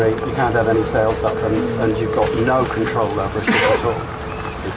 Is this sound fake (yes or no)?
no